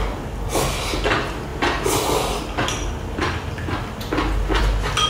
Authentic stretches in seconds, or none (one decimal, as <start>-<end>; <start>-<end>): 0.0-5.1